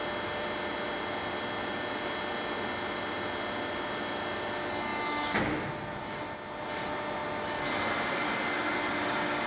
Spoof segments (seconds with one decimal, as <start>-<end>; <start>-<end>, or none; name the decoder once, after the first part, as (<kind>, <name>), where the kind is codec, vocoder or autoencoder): none